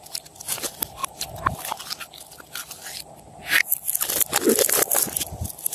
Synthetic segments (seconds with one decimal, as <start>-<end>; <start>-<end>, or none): none